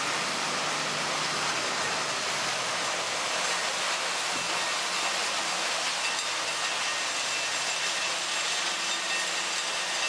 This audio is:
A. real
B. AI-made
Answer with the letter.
A